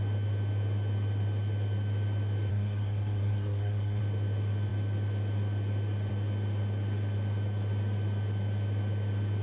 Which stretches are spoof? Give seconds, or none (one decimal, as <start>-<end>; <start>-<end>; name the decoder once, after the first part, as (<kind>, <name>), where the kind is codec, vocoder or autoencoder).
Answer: 2.5-4.0 (codec, SNAC)